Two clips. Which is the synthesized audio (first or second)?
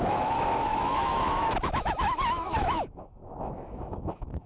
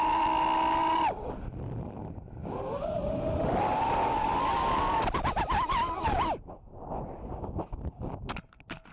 first